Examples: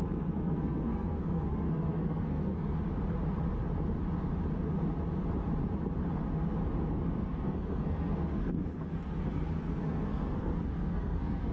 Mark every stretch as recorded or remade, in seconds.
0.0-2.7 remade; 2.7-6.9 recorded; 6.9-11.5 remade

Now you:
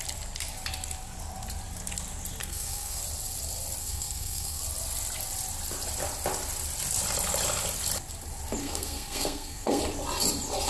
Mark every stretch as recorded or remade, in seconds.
0.0-2.4 recorded; 2.4-3.0 remade; 3.0-3.8 recorded; 3.8-4.6 remade; 4.6-8.6 recorded; 8.6-9.8 remade; 9.8-10.7 recorded

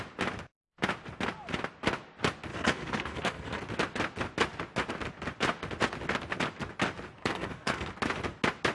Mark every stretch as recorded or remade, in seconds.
0.0-2.5 recorded; 2.5-3.6 remade; 3.6-7.2 recorded; 7.2-7.9 remade; 7.9-8.7 recorded